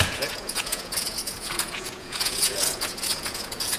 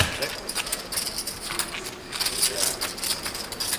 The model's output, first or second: first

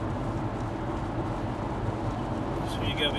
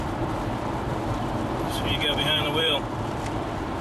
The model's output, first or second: second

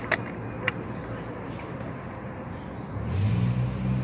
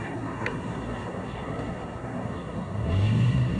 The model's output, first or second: second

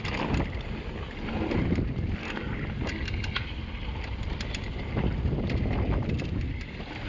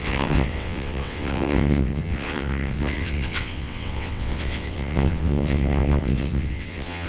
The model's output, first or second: second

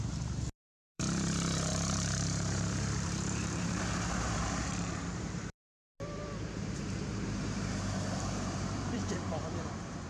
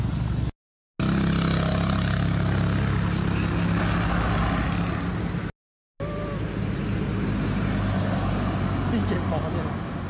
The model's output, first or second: first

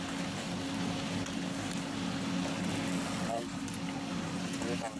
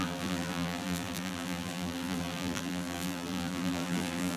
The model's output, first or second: second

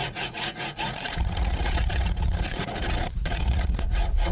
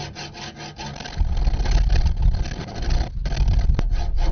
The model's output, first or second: first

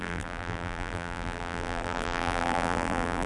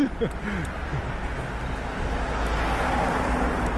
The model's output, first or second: first